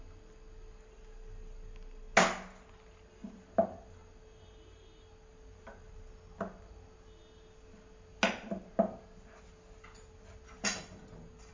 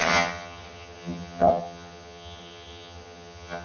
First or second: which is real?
first